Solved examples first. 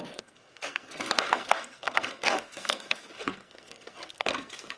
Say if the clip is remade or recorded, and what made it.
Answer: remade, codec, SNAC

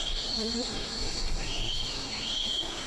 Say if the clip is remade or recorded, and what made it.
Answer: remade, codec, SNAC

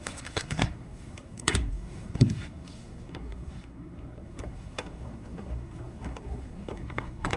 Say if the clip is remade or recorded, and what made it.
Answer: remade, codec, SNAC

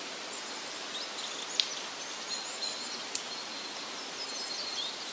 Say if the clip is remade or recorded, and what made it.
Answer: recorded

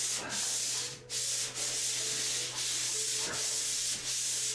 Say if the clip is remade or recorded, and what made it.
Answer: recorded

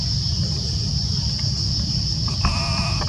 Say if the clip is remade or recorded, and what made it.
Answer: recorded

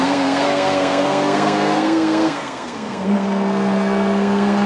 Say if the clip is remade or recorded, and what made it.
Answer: remade, codec, SNAC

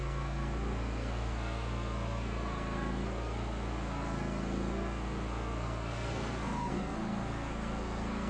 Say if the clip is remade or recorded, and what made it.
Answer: remade, codec, SNAC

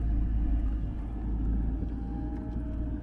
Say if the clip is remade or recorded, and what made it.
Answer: recorded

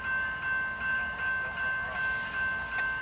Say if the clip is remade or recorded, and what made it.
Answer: recorded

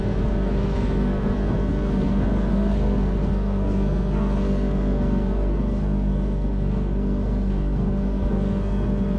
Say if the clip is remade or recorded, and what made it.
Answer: remade, codec, SNAC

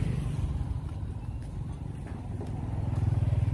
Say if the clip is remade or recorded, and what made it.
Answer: recorded